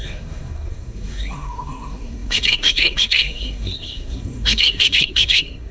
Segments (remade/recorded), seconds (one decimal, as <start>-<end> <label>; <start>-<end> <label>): 0.0-5.7 remade